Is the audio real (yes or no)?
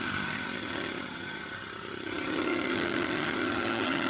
no